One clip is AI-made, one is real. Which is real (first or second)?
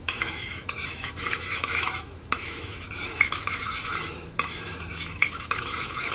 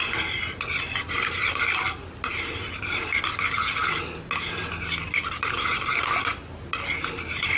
second